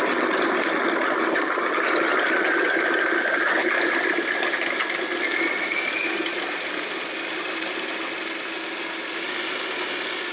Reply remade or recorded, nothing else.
recorded